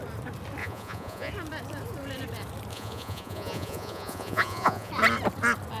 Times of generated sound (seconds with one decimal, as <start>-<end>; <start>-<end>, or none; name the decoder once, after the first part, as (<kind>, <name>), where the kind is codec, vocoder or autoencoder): 0.6-1.3 (vocoder, Vocos); 2.7-4.9